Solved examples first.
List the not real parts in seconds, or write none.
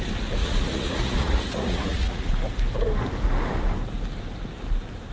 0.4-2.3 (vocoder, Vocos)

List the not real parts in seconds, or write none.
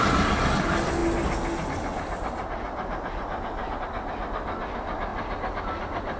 none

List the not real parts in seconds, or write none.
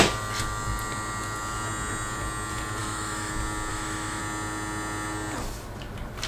2.8-3.3 (autoencoder, DAC-VAE); 3.7-4.2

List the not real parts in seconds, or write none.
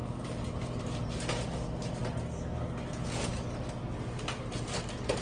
none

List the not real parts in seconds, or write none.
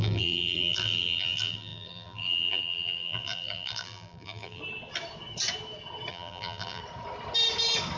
0.0-4.6 (vocoder, BigVGAN v2); 6.1-6.8